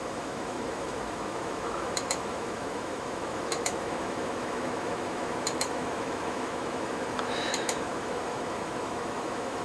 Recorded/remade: remade